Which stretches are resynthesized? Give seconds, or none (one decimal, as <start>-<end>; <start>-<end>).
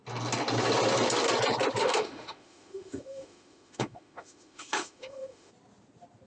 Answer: 1.8-5.5